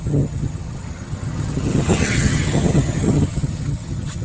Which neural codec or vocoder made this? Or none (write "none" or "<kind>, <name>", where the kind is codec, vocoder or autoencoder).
vocoder, HiFi-GAN